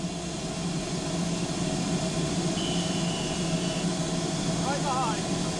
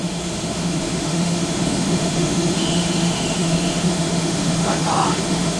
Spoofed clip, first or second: second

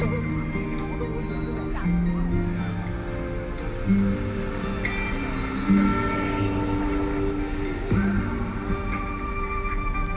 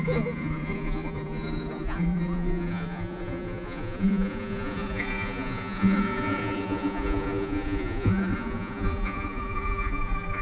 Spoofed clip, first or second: second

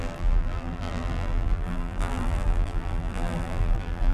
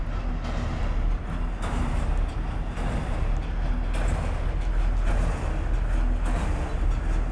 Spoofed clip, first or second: first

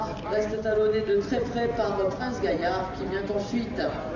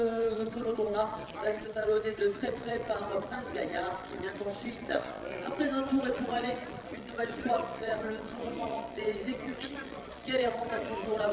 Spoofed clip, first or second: second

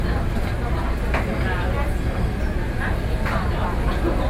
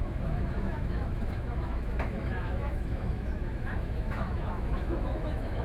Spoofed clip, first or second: second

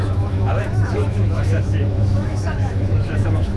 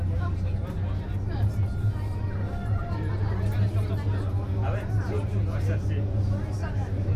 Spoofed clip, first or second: first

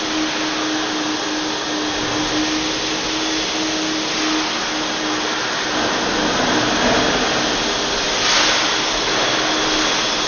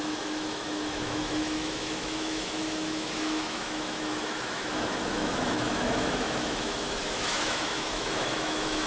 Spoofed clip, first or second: second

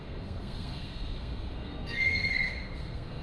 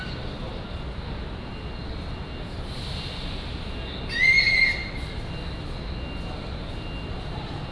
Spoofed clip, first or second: first